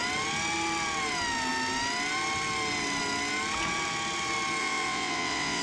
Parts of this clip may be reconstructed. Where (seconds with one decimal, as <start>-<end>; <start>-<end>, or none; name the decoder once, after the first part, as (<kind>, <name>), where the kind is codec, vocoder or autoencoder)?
4.6-5.6 (vocoder, WaveNeXt)